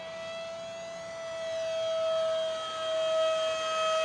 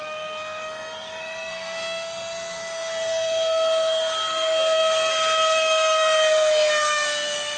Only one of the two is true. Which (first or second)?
first